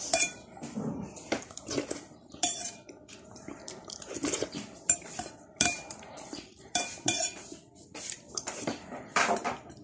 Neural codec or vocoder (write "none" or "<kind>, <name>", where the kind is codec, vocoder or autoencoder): vocoder, BigVGAN v2